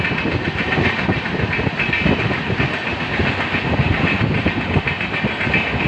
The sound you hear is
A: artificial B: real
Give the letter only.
B